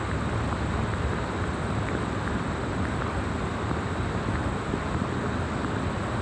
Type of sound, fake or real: real